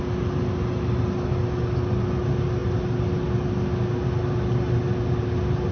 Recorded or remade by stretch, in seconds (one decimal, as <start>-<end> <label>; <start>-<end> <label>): 0.0-5.7 recorded

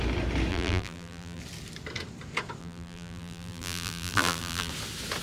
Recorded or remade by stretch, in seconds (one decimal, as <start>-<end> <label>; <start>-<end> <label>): 0.0-0.5 recorded; 0.5-1.4 remade; 1.4-2.6 recorded; 2.6-4.7 remade; 4.7-5.2 recorded

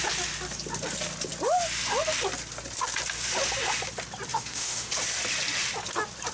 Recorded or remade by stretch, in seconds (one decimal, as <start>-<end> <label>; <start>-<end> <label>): 0.0-4.3 recorded; 4.3-4.9 remade; 4.9-6.3 recorded